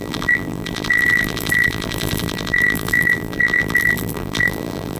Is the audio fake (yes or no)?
yes